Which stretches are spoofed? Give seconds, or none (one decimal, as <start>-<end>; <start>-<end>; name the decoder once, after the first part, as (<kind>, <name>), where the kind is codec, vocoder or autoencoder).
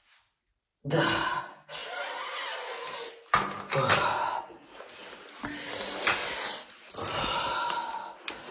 none